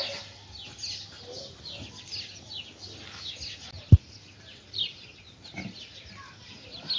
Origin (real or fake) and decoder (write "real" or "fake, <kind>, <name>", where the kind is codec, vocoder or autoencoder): real